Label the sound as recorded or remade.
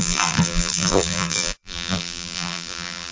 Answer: remade